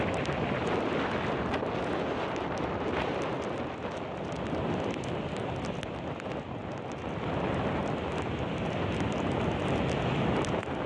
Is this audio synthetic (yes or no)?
no